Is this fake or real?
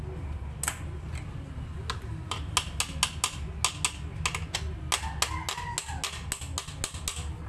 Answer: real